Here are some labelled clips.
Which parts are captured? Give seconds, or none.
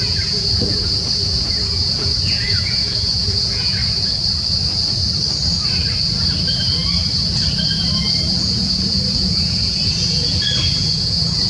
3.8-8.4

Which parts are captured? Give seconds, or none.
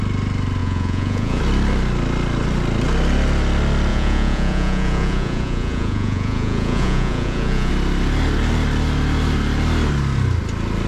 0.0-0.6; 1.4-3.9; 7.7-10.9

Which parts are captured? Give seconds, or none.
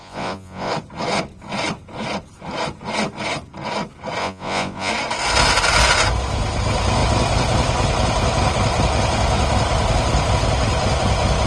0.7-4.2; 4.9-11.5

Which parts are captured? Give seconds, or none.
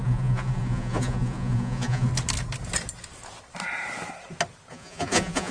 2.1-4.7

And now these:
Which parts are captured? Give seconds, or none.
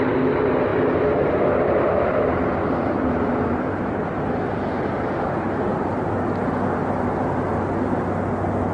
0.0-8.7